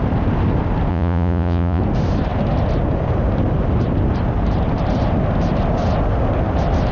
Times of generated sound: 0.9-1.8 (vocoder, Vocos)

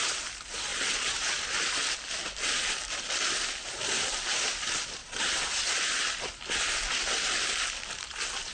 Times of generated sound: 5.0-5.8 (vocoder, Vocos)

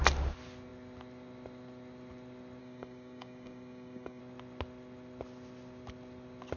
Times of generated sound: 2.6-4.2 (codec, DAC)

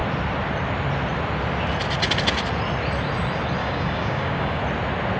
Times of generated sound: 3.6-4.6 (codec, DAC)

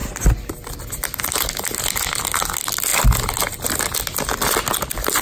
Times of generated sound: none

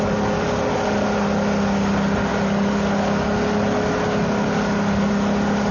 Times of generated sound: none